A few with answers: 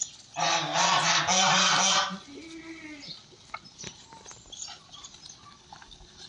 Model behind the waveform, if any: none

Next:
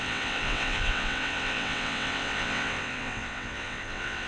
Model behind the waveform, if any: vocoder, WaveNeXt